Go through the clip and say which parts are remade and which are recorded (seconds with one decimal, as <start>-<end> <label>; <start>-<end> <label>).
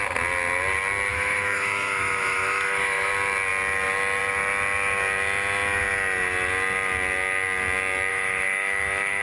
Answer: 0.0-1.1 recorded; 1.1-3.1 remade; 3.1-8.1 recorded; 8.1-9.2 remade